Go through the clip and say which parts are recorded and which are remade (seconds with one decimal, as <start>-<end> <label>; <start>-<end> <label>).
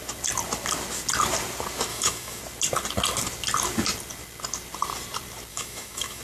0.0-1.9 recorded; 1.9-2.4 remade; 2.4-5.5 recorded; 5.5-6.2 remade